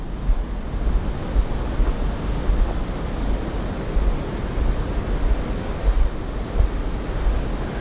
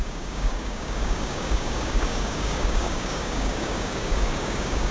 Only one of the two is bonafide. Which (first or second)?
first